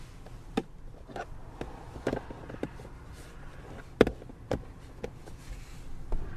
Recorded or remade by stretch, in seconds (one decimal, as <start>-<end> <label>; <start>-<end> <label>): 0.0-0.6 recorded; 0.6-1.2 remade; 1.2-2.4 recorded; 2.4-3.6 remade; 3.6-6.4 recorded